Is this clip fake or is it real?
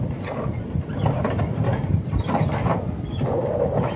real